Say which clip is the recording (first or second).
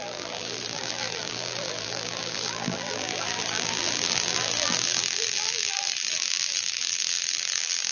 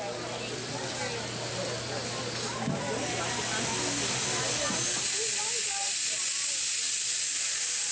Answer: second